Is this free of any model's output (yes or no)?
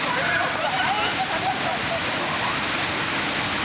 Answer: yes